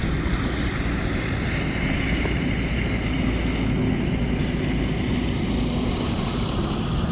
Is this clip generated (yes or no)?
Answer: no